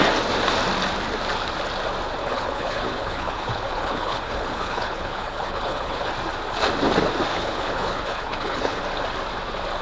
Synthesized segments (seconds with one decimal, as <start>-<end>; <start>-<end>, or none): 2.2-6.1; 7.3-8.8